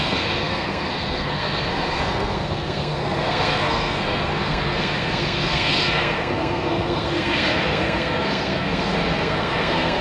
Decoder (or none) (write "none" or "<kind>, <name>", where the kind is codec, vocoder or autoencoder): codec, SNAC